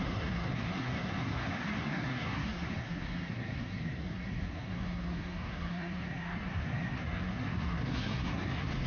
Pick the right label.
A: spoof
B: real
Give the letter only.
A